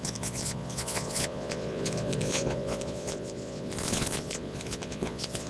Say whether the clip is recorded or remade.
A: remade